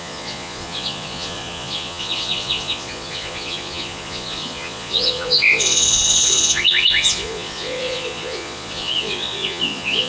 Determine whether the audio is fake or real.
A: fake